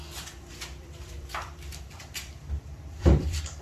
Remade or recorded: remade